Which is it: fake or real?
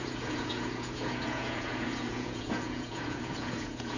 fake